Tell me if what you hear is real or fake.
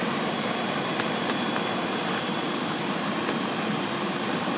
fake